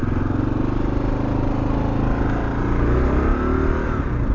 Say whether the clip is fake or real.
real